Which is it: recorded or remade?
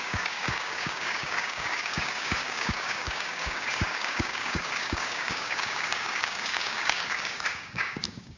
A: remade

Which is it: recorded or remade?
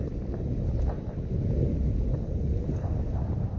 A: recorded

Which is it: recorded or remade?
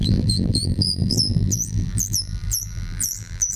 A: remade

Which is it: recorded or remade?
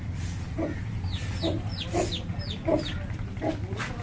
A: recorded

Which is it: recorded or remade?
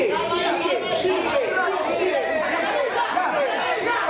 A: recorded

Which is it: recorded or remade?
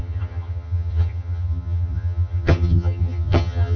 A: remade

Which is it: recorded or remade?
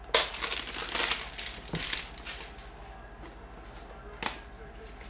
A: recorded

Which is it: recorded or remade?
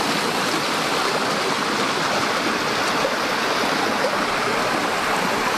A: recorded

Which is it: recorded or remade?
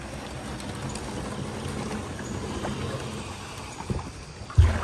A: recorded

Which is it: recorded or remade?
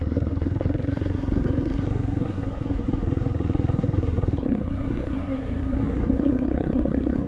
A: remade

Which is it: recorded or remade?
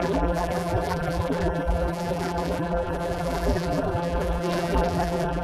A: remade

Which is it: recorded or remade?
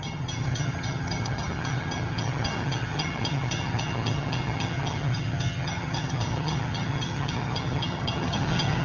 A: remade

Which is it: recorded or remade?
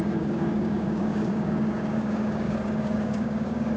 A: remade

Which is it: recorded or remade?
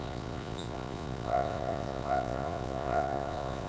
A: remade